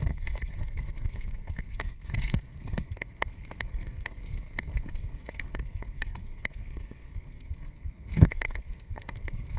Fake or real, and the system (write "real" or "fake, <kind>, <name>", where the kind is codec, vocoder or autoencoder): fake, codec, SNAC